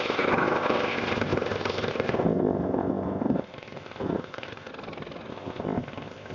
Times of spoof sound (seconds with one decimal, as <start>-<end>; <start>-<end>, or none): 0.0-4.7; 5.3-6.3